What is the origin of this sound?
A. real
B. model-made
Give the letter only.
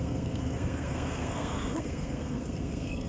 B